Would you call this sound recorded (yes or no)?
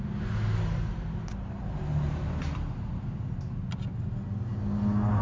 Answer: yes